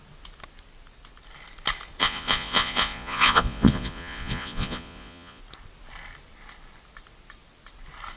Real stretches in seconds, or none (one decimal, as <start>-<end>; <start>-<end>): 0.0-2.0; 5.4-8.2